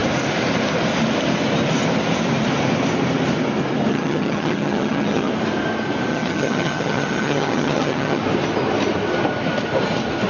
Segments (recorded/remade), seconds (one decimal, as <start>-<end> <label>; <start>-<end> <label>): 0.0-3.9 recorded; 3.9-5.3 remade; 5.3-6.1 recorded; 6.1-8.2 remade; 8.2-10.3 recorded